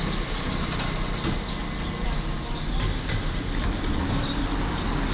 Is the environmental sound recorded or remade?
recorded